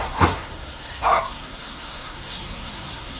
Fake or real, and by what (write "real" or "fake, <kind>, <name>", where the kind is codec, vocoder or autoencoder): fake, codec, SNAC